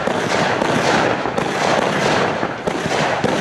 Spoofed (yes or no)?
no